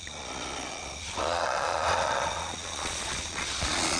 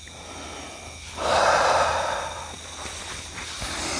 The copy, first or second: first